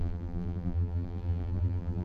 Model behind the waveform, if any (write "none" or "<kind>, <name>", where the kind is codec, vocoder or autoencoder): vocoder, BigVGAN v2